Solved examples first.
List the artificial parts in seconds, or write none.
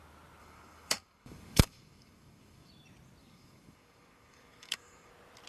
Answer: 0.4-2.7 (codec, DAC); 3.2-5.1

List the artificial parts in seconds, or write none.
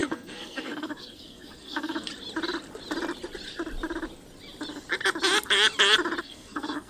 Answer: 0.0-2.1 (codec, SNAC); 6.2-6.9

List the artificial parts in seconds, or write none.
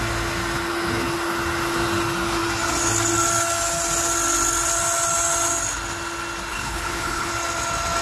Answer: 6.5-7.3 (codec, HILCodec)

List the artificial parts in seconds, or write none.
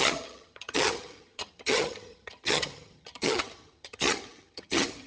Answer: 0.0-5.1 (vocoder, HiFi-GAN)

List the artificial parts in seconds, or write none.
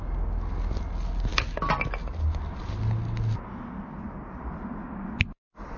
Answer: none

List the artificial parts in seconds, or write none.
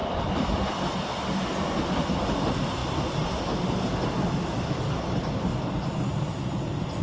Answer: none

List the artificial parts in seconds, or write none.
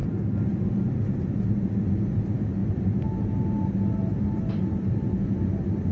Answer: none